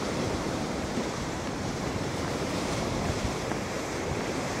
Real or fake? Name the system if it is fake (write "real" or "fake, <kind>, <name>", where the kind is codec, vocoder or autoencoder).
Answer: fake, vocoder, BigVGAN v2